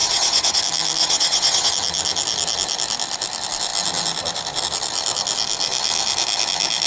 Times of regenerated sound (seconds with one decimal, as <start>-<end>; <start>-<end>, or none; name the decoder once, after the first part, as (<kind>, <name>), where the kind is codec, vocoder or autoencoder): 0.0-0.6 (vocoder, WaveNeXt); 1.0-1.7